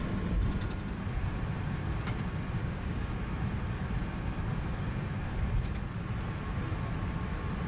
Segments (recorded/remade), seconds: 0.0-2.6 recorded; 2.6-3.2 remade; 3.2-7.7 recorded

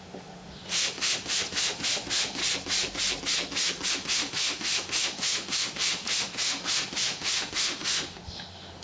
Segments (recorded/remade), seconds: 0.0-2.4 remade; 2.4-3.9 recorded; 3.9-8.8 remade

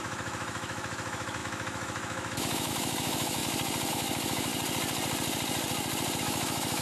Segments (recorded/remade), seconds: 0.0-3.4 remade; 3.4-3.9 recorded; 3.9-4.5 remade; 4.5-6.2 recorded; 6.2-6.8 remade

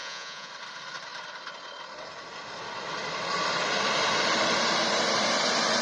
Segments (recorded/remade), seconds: 0.0-0.5 remade; 0.5-5.8 recorded